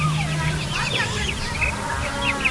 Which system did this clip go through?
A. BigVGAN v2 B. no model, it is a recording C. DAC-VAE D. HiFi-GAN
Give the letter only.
B